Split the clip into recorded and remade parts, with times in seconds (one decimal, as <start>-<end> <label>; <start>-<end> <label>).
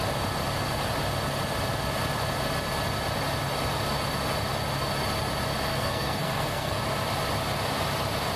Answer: 0.0-5.7 recorded; 5.7-6.8 remade; 6.8-8.4 recorded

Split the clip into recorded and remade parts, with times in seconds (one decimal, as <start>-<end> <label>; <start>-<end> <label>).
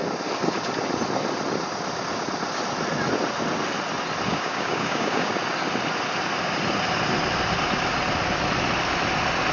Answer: 0.0-4.3 recorded; 4.3-5.3 remade; 5.3-9.5 recorded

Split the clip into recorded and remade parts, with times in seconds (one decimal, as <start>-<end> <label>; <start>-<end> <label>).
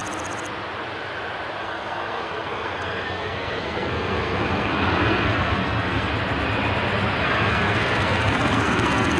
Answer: 0.0-1.6 recorded; 1.6-6.1 remade; 6.1-7.2 recorded; 7.2-9.2 remade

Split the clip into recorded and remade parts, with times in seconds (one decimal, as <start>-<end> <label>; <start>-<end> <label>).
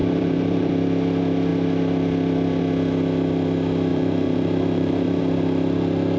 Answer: 0.0-0.7 remade; 0.7-3.9 recorded; 3.9-5.2 remade; 5.2-6.2 recorded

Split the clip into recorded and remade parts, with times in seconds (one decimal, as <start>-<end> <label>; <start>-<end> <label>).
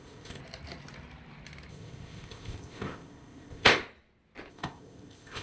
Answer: 0.0-0.4 remade; 0.4-1.7 recorded; 1.7-3.8 remade; 3.8-4.5 recorded; 4.5-5.4 remade